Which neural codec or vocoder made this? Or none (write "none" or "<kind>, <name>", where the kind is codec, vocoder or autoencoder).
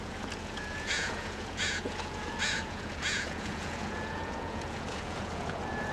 vocoder, Vocos